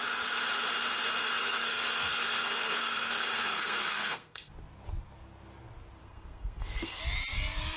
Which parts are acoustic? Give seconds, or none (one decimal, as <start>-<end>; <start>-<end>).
0.0-1.4; 4.5-6.0; 7.0-7.8